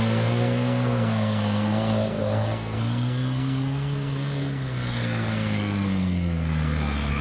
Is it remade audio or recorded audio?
remade